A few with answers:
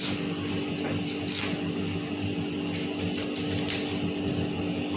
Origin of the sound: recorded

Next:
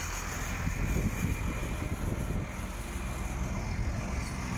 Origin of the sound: recorded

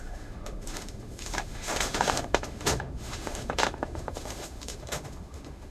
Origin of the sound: remade